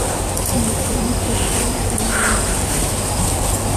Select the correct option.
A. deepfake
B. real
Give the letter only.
B